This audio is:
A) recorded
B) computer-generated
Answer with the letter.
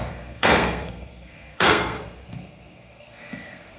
B